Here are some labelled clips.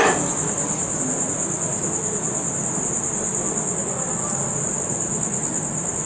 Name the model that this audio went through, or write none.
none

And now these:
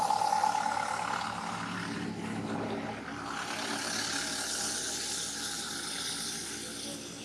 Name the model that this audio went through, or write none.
none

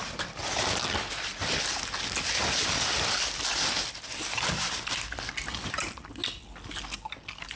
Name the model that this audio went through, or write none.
none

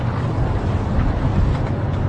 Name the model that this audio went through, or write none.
none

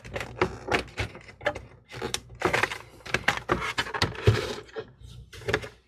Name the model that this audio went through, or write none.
none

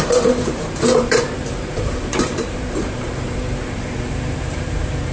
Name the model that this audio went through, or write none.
vocoder, BigVGAN v2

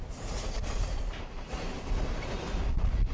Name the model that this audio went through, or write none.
none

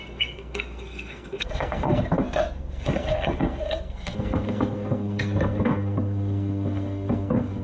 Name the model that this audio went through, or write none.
codec, SNAC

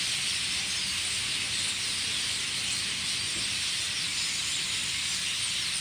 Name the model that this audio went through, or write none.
none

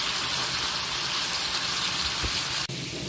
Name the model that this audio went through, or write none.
none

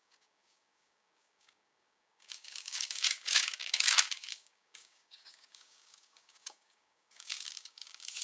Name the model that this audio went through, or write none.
codec, DAC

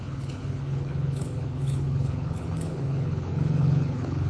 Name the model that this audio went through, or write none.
codec, HILCodec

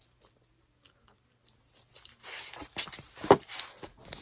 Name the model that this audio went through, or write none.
none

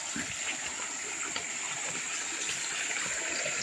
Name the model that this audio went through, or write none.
none